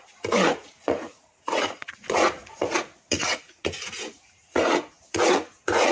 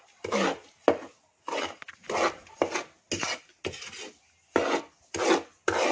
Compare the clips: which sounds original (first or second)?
second